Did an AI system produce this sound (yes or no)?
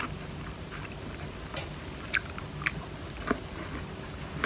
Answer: no